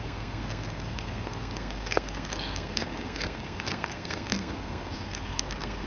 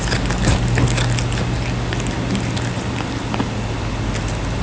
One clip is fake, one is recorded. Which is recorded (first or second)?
second